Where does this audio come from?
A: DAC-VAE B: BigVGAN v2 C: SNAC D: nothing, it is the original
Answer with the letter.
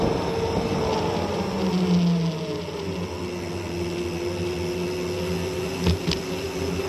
D